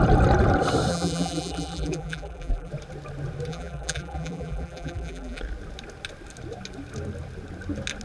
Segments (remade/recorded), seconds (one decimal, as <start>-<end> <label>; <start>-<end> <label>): 0.0-0.9 recorded; 0.9-2.7 remade; 2.7-3.5 recorded; 3.5-5.4 remade; 5.4-8.0 recorded